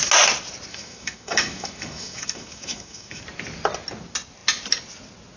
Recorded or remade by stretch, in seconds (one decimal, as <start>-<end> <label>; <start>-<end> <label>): 0.0-0.7 recorded; 0.7-3.2 remade; 3.2-5.4 recorded